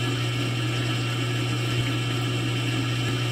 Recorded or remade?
recorded